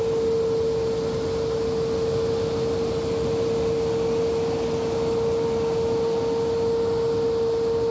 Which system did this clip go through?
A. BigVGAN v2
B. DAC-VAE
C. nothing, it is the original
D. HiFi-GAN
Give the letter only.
C